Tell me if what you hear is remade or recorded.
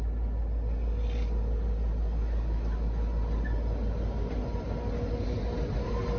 recorded